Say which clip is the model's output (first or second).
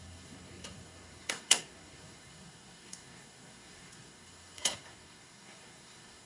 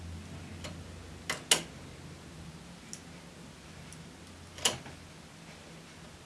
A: first